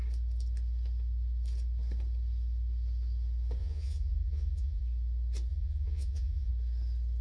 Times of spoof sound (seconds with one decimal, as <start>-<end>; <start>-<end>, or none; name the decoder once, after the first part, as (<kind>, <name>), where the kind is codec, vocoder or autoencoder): 3.6-4.8 (vocoder, Vocos); 5.5-6.5